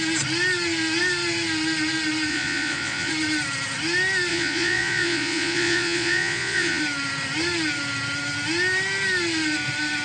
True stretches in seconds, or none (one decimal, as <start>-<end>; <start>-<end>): 0.0-2.3; 3.1-4.3; 6.8-10.0